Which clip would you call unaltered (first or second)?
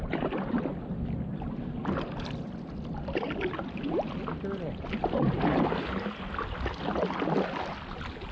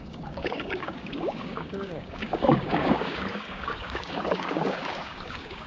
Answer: first